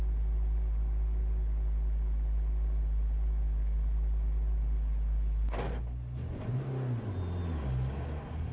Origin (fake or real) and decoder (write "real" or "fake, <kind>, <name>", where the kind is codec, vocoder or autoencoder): real